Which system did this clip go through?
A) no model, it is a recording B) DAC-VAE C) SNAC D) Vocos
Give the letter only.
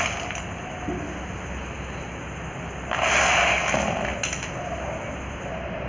A